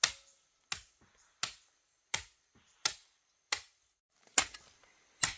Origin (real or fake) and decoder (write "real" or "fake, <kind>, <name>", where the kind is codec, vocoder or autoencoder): real